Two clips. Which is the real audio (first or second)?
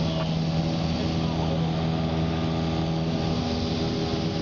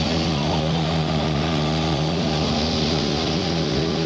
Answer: first